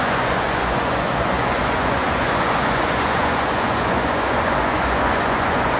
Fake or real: fake